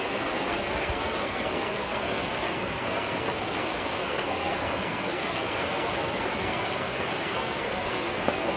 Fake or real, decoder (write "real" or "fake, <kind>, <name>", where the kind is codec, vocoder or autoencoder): fake, codec, SNAC